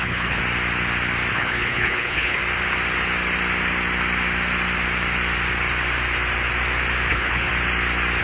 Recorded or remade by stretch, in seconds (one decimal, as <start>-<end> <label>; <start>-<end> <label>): 0.0-0.4 remade; 0.4-1.3 recorded; 1.3-2.4 remade; 2.4-7.1 recorded; 7.1-7.5 remade; 7.5-8.2 recorded